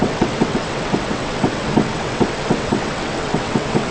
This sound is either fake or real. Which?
fake